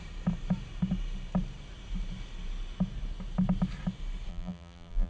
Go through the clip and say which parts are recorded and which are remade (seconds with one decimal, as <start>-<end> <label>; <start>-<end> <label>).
0.0-4.3 recorded; 4.3-5.1 remade